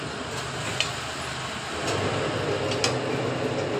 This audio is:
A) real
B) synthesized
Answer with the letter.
A